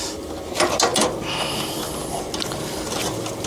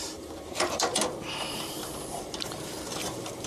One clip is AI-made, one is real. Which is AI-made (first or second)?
second